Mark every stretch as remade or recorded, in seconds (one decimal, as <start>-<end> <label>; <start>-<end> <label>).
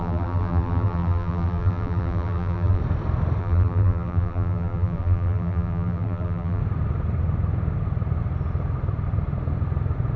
0.0-2.8 remade; 2.8-3.4 recorded; 3.4-6.6 remade; 6.6-10.2 recorded